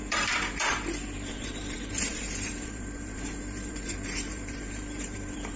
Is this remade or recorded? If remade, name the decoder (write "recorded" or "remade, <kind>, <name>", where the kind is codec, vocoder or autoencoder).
remade, vocoder, BigVGAN v2